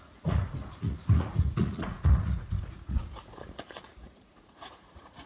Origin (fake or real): fake